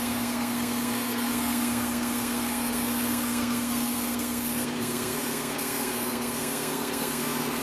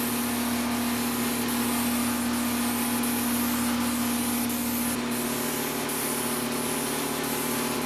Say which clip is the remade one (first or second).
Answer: first